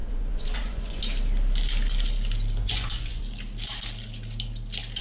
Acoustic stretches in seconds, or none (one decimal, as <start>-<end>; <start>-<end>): 1.0-2.6; 3.2-5.0